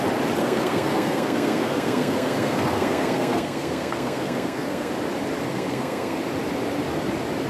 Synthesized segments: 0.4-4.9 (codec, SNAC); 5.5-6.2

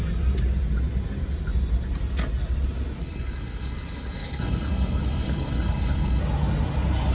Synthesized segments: 3.0-6.2 (codec, HILCodec)

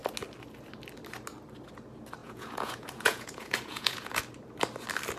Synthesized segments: 2.2-4.2 (vocoder, Vocos)

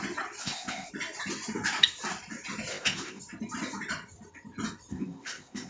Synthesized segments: 0.4-0.9 (codec, ZipCodec); 2.7-3.2; 4.9-5.7

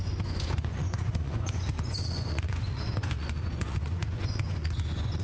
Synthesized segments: 0.0-5.2 (vocoder, Vocos)